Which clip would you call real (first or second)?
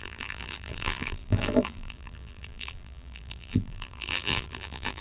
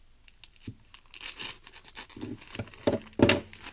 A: second